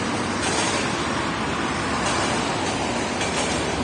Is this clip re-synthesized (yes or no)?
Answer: yes